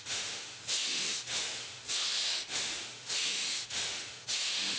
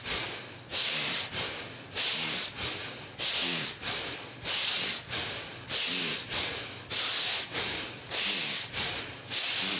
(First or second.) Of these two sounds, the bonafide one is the second